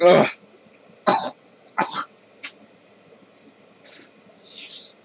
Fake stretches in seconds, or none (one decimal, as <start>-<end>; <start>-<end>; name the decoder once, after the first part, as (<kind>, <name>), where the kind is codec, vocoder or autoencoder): 1.1-2.2 (vocoder, WaveNeXt)